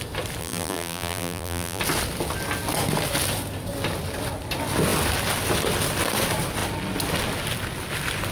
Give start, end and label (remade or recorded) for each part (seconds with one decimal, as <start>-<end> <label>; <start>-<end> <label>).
0.0-0.4 recorded; 0.4-1.8 remade; 1.8-8.3 recorded